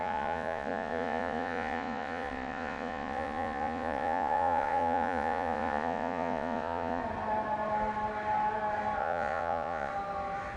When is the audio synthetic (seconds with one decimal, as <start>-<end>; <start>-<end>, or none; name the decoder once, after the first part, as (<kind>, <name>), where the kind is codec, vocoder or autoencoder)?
0.0-7.0 (vocoder, Vocos); 9.0-9.9